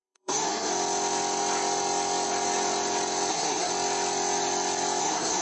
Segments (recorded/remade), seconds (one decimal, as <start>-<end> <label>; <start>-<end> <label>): 0.0-0.7 remade; 0.7-3.3 recorded; 3.3-3.7 remade; 3.7-5.0 recorded; 5.0-5.4 remade